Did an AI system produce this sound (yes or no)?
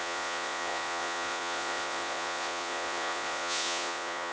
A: yes